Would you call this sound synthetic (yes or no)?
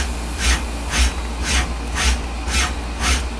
no